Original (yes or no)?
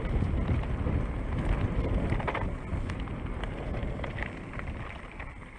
yes